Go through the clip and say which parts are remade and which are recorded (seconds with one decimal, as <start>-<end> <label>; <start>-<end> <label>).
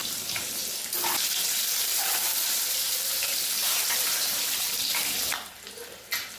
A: 0.0-3.6 recorded; 3.6-4.8 remade; 4.8-6.4 recorded